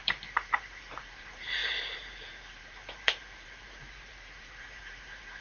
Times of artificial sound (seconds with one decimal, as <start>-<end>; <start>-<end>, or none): 0.0-5.4